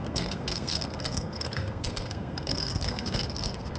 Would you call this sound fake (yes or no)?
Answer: yes